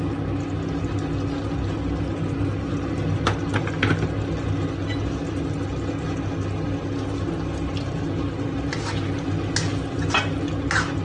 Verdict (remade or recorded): recorded